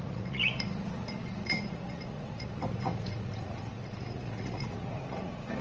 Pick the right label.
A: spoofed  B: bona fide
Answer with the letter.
A